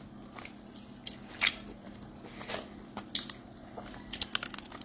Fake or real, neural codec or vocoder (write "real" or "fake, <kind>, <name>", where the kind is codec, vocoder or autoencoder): real